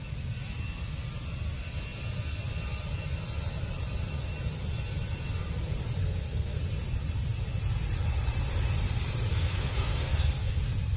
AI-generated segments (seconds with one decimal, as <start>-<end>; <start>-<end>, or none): 6.0-6.6; 9.3-10.6